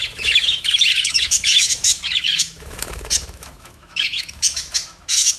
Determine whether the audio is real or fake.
fake